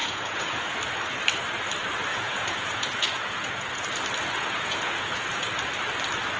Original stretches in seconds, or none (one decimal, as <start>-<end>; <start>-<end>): 0.7-2.1; 3.8-4.4; 5.5-6.4